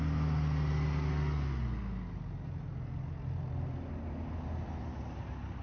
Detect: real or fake real